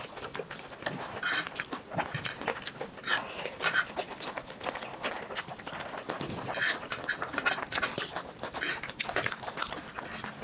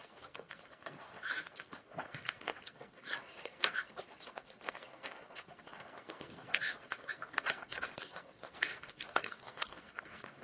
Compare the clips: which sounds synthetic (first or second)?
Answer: second